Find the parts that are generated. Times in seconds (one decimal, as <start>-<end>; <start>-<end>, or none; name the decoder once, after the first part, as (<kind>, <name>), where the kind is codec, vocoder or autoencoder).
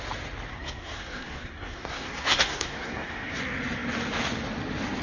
0.5-3.4 (codec, SNAC)